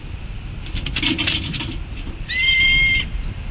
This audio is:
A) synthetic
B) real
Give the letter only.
B